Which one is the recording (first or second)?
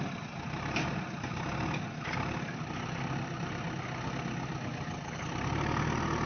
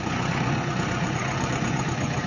first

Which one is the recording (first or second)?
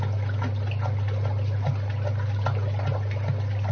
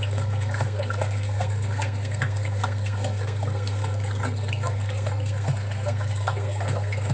first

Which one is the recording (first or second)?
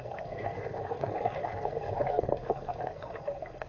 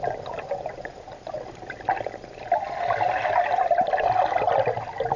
second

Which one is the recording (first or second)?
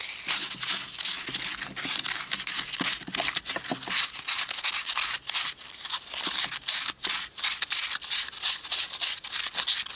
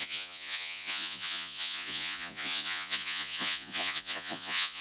first